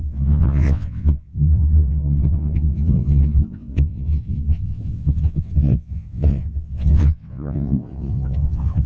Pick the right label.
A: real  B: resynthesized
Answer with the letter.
B